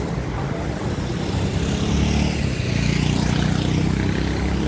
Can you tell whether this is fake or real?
real